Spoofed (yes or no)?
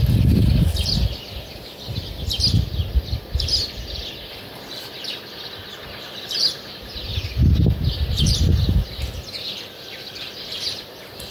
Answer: no